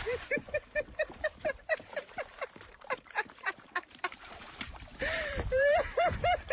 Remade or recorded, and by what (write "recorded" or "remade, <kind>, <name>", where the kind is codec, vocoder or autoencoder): remade, vocoder, BigVGAN v2